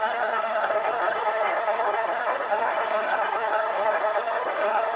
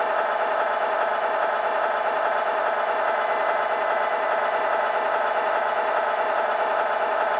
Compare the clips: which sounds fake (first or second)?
first